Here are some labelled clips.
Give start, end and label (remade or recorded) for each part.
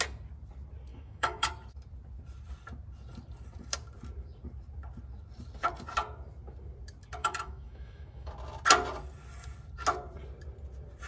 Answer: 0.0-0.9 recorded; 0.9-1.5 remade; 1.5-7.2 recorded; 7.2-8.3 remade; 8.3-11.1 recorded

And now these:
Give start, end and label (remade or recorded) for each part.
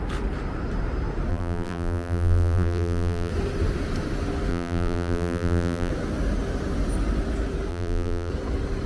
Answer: 0.0-1.3 recorded; 1.3-3.3 remade; 3.3-4.5 recorded; 4.5-5.9 remade; 5.9-7.7 recorded; 7.7-8.3 remade; 8.3-8.9 recorded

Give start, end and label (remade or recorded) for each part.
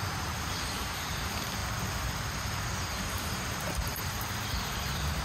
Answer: 0.0-1.6 remade; 1.6-3.1 recorded; 3.1-5.2 remade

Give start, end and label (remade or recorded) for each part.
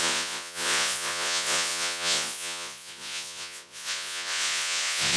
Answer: 0.0-5.2 remade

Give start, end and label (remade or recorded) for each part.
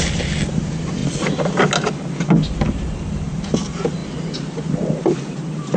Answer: 0.0-5.8 recorded